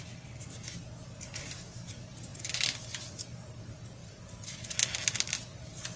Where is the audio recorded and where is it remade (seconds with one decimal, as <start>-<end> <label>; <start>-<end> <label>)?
0.0-6.0 recorded